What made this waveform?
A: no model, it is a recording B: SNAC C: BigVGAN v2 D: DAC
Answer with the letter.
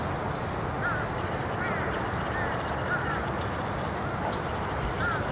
A